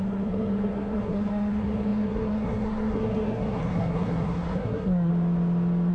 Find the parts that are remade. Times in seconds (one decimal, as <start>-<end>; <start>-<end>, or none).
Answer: 0.0-5.1